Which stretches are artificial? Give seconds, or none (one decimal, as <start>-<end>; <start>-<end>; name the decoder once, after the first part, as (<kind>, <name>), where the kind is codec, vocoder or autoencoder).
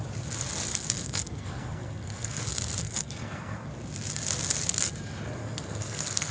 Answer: 0.7-2.4 (codec, SNAC); 2.8-3.7; 5.4-6.3